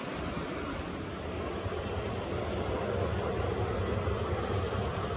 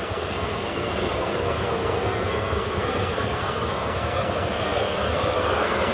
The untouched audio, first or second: first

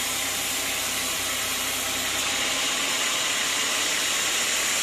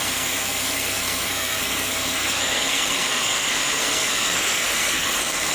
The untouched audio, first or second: first